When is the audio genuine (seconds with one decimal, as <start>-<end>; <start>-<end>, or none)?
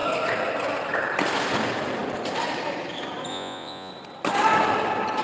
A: 0.0-3.3; 3.9-5.2